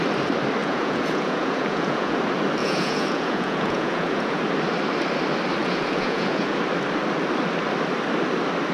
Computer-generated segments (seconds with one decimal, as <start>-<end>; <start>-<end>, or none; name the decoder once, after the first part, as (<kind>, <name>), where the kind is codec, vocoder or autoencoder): 0.6-2.2 (vocoder, Vocos); 2.6-4.4; 5.6-6.6